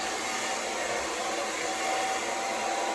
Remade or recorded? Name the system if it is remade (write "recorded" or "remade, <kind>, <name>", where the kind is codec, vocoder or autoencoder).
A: recorded